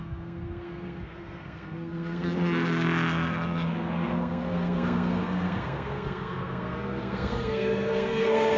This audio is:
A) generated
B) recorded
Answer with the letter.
A